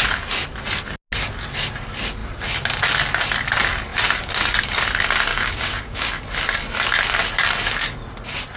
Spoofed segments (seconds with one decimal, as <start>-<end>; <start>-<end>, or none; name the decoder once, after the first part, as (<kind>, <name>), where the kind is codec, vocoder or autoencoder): 5.3-6.1 (codec, DAC)

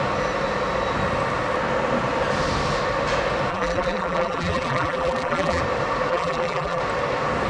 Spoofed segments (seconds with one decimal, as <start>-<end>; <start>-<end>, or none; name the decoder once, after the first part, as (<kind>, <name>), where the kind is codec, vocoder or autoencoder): 3.5-5.6 (vocoder, BigVGAN v2); 6.1-6.8

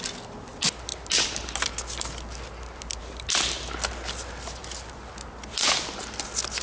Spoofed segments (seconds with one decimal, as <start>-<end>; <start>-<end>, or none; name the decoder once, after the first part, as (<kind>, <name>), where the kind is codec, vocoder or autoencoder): none

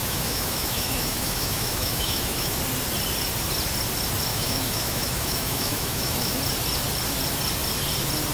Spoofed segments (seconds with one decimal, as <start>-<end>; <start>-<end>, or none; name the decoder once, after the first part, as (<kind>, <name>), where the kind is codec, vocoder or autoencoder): 0.0-2.6 (autoencoder, DAC-VAE); 4.3-6.4

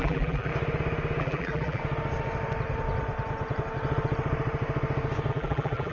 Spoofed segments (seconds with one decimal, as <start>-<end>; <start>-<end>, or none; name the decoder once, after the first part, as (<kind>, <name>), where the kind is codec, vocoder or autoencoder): 0.0-0.5 (vocoder, BigVGAN v2); 1.2-1.8; 5.3-5.9

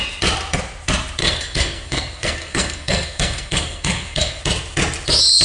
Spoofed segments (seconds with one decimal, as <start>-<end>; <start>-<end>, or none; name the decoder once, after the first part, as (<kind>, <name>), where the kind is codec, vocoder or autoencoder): 1.2-4.4 (codec, SNAC)

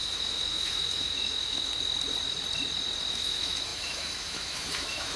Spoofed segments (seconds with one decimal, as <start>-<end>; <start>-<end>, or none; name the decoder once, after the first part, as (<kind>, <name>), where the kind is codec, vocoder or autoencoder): 0.0-1.7 (autoencoder, DAC-VAE); 3.1-5.2

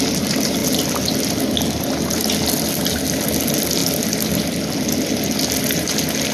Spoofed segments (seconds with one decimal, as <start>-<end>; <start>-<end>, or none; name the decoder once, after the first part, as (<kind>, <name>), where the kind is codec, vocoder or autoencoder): none